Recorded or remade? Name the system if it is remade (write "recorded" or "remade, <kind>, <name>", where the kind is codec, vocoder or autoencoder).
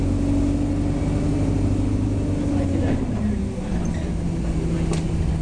recorded